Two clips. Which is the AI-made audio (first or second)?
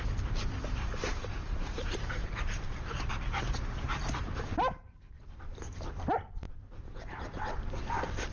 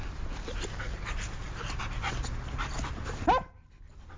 first